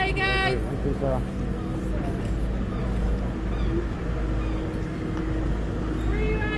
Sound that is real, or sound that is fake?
real